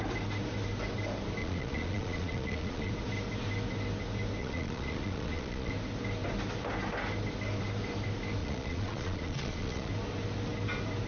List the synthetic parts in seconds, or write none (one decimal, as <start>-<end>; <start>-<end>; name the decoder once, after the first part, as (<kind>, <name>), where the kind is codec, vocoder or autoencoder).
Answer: 1.4-2.9 (vocoder, Vocos); 4.4-5.7; 8.4-9.9